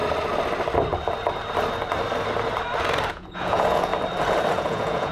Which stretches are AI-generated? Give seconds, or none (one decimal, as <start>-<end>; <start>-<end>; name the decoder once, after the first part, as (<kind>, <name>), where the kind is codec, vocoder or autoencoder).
3.1-3.9 (vocoder, Vocos); 4.5-5.1